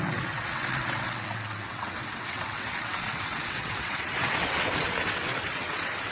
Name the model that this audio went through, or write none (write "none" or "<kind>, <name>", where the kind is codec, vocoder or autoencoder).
vocoder, WaveNeXt